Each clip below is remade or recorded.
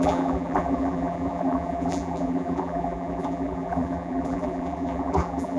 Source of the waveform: remade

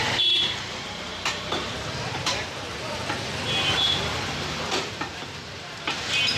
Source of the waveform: remade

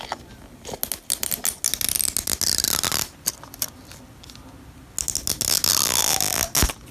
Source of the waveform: recorded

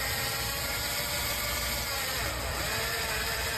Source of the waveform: remade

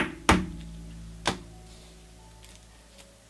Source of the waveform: recorded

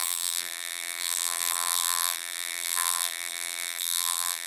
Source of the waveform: remade